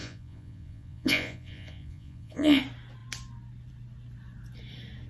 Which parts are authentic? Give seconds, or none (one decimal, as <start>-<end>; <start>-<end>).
2.6-5.1